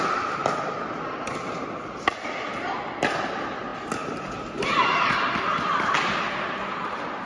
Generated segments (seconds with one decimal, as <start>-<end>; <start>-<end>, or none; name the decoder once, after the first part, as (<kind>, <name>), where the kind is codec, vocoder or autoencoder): 0.4-1.5 (vocoder, BigVGAN v2)